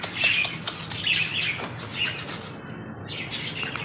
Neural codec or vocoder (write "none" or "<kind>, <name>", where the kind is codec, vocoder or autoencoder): none